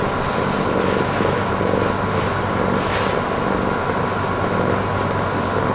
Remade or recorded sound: recorded